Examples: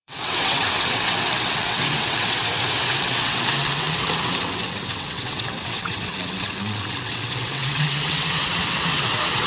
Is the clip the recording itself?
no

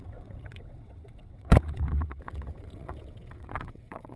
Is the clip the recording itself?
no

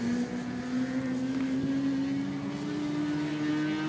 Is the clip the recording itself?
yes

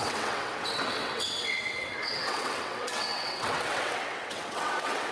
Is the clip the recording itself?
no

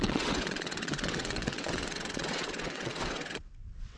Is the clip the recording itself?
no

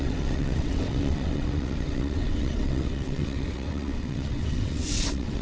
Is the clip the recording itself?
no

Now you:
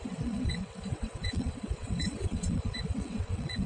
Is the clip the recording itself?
no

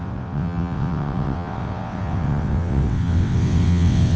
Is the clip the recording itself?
no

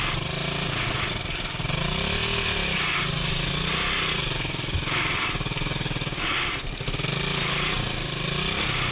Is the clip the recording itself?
yes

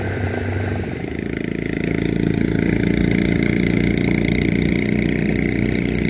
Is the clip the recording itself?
yes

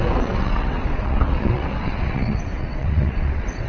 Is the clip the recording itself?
no